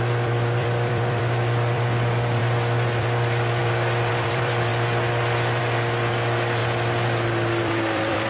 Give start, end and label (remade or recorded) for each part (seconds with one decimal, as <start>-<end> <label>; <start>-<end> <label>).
0.0-2.4 remade; 2.4-3.0 recorded; 3.0-4.7 remade; 4.7-5.6 recorded; 5.6-6.6 remade; 6.6-7.6 recorded; 7.6-8.3 remade